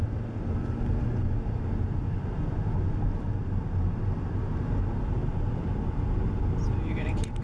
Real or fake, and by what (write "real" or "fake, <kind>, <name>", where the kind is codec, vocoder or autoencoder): real